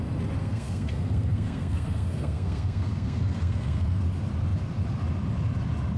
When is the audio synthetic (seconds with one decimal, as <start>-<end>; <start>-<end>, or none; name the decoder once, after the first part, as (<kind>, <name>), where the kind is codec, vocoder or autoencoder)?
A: 0.4-4.0 (codec, SNAC)